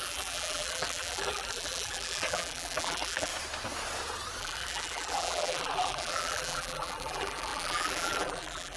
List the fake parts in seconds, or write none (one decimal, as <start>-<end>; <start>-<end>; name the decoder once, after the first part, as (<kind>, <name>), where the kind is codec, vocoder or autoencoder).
0.0-3.3 (vocoder, BigVGAN v2); 4.4-8.8